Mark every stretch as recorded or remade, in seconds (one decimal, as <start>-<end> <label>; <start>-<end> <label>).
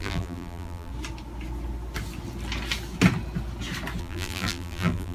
0.0-0.9 remade; 0.9-4.0 recorded; 4.0-5.1 remade